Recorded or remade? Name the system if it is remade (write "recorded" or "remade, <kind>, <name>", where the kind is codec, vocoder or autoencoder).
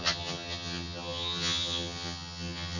remade, vocoder, HiFi-GAN